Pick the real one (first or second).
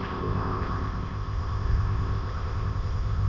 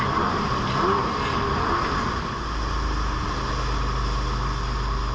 second